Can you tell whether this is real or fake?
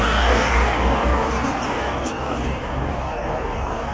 fake